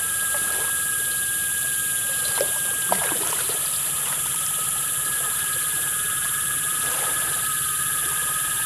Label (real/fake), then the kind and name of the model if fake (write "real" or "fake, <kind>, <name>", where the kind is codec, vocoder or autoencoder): fake, vocoder, BigVGAN v2